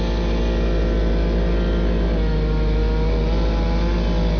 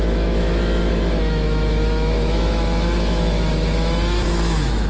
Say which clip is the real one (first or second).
first